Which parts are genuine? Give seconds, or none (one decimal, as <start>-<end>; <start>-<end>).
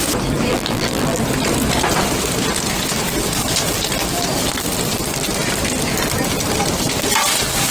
0.0-0.5; 1.2-7.7